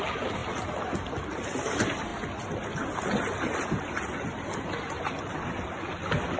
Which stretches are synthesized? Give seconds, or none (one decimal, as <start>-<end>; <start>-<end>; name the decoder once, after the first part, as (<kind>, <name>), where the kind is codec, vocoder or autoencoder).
none